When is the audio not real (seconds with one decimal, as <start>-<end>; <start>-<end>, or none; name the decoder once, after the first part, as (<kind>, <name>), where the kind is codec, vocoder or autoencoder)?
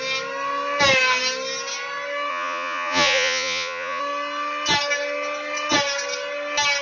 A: 2.3-4.0 (vocoder, Vocos)